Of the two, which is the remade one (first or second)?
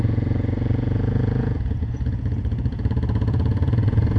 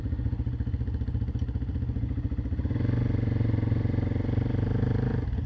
first